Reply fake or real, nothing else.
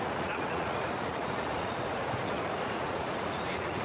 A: fake